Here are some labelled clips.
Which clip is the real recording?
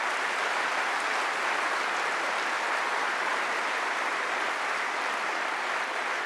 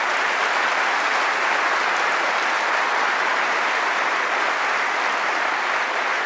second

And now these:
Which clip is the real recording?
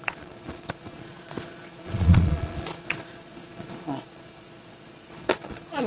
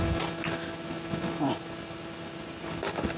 second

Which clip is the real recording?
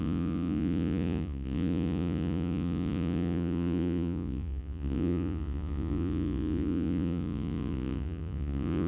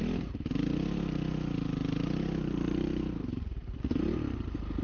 second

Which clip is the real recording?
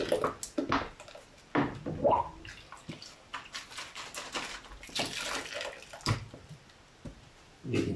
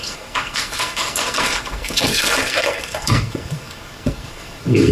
first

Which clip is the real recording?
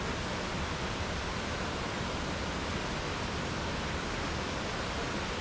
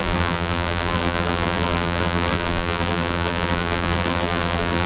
first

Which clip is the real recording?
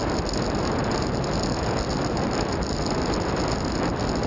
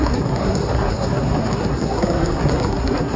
first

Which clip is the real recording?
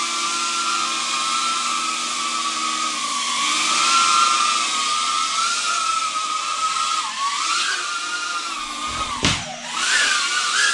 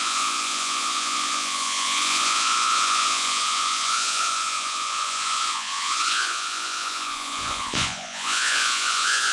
first